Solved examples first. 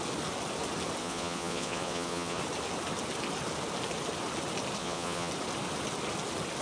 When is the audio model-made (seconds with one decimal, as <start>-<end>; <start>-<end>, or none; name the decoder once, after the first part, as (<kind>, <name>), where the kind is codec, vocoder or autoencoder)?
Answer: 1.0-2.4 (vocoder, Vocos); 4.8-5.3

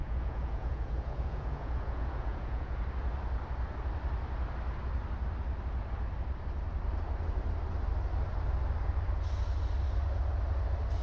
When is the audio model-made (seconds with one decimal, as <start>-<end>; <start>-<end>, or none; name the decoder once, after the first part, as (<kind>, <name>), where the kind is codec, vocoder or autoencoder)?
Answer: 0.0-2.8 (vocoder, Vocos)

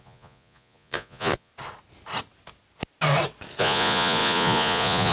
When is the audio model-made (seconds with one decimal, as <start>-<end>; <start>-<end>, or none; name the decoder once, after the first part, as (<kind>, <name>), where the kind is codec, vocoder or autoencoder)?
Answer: 0.0-1.5 (vocoder, Vocos); 3.6-5.1

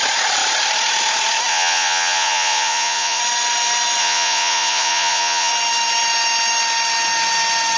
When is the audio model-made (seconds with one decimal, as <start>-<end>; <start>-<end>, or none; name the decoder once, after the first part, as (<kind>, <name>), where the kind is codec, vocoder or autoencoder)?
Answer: 1.5-3.2 (vocoder, Vocos); 4.0-5.5

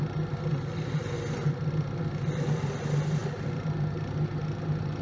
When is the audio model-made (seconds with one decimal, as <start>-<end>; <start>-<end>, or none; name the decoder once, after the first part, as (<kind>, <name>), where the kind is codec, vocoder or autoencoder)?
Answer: none